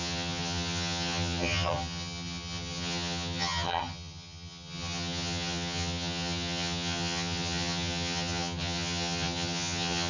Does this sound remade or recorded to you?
remade